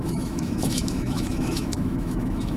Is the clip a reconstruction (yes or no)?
yes